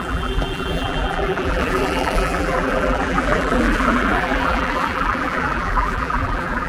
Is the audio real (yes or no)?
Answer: no